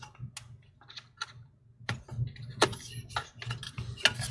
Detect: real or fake real